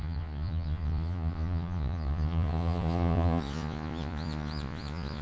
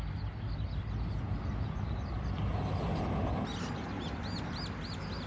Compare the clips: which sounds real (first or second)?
second